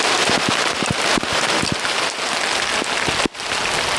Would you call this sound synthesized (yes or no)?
no